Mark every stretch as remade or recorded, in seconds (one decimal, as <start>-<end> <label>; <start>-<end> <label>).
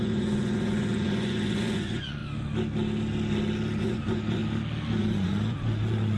0.0-2.2 remade; 2.2-3.8 recorded; 3.8-4.4 remade; 4.4-5.0 recorded; 5.0-6.2 remade